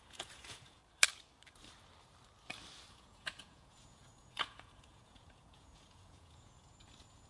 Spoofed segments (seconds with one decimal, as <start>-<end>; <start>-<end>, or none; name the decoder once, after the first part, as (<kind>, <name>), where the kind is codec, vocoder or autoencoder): 0.0-0.8 (vocoder, Vocos); 2.9-7.3